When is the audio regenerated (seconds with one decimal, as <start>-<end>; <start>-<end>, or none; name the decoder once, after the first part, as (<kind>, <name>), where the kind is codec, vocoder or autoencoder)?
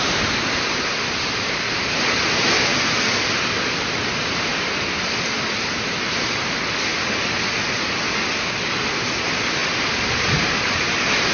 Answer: 0.0-2.7 (vocoder, BigVGAN v2); 3.8-6.9; 9.1-11.3